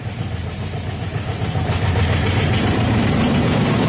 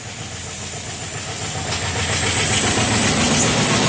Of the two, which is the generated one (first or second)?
first